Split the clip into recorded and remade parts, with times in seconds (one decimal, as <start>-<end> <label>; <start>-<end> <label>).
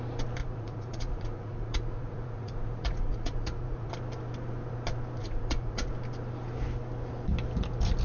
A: 0.0-0.4 recorded; 0.4-3.9 remade; 3.9-5.2 recorded; 5.2-5.9 remade; 5.9-8.0 recorded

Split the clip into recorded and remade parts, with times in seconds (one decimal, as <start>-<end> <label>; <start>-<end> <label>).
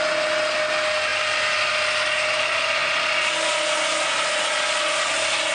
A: 0.0-5.5 recorded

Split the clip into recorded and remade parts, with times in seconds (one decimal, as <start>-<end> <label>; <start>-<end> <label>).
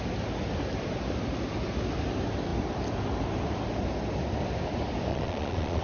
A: 0.0-5.1 recorded; 5.1-5.8 remade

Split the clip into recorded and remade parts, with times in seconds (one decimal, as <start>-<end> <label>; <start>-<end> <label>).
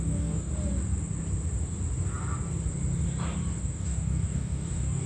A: 0.0-0.5 remade; 0.5-3.6 recorded; 3.6-5.1 remade